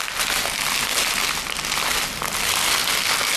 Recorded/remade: recorded